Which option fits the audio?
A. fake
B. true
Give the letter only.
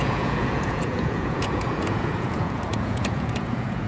A